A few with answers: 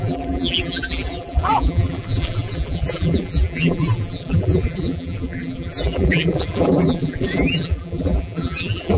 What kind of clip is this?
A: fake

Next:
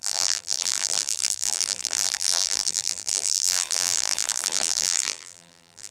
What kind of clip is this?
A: fake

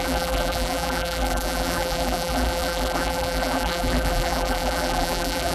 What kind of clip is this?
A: fake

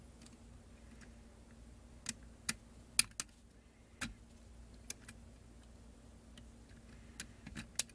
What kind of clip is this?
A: real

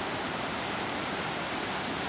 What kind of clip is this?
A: fake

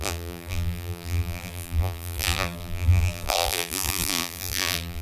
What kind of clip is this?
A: fake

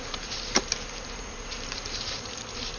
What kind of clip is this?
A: fake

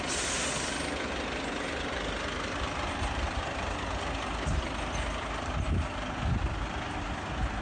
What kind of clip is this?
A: real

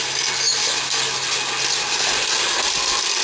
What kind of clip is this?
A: real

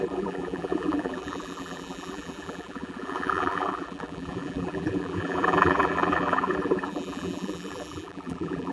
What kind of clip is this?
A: fake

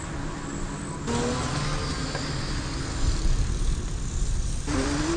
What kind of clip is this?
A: real